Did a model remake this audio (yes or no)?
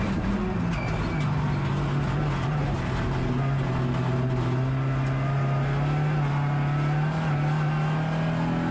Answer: no